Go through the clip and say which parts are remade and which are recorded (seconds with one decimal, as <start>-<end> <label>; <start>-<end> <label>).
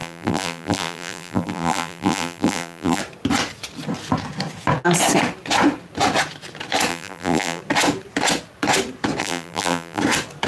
0.0-3.0 remade; 3.0-6.9 recorded; 6.9-7.6 remade; 7.6-9.2 recorded; 9.2-10.0 remade; 10.0-10.5 recorded